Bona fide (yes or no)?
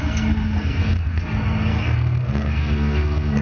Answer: no